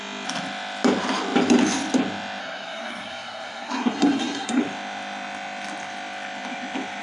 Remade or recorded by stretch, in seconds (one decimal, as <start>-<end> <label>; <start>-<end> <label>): 0.0-2.4 recorded; 2.4-4.6 remade; 4.6-7.0 recorded